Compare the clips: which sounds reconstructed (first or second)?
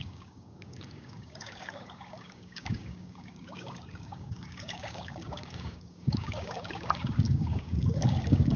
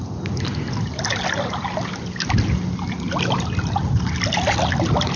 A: first